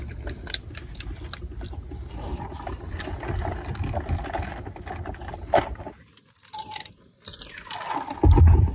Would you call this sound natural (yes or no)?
yes